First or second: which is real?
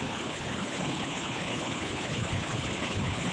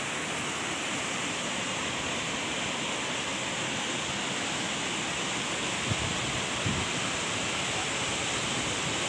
second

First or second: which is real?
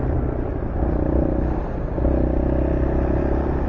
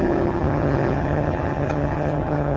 first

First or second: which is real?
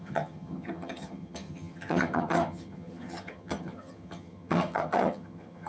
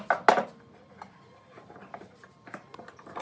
second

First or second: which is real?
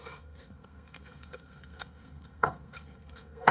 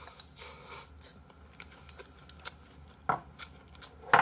second